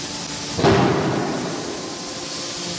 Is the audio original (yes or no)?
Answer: yes